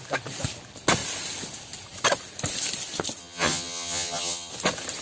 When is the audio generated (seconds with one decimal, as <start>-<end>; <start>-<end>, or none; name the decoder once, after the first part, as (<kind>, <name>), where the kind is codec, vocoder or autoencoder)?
3.2-4.5 (vocoder, HiFi-GAN)